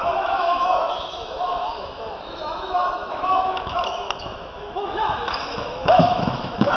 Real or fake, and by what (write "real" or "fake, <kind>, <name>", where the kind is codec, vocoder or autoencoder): fake, autoencoder, DAC-VAE